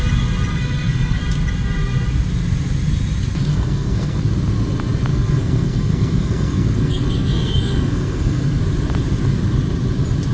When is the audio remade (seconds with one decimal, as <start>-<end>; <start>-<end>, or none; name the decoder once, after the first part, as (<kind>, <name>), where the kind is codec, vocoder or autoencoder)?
0.5-1.2 (codec, SNAC); 3.5-4.2; 5.1-8.6